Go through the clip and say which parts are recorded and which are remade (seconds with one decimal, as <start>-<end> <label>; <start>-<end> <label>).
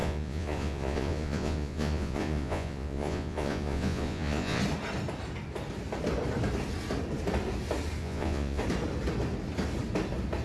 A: 0.0-4.6 remade; 4.6-8.0 recorded; 8.0-8.6 remade; 8.6-10.4 recorded